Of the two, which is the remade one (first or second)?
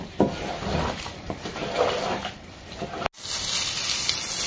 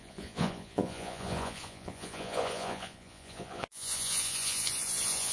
second